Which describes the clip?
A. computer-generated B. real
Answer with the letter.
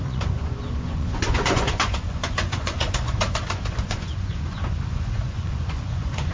A